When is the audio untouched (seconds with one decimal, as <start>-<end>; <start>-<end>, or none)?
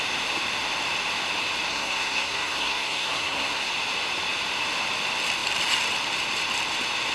0.0-1.7; 3.7-7.1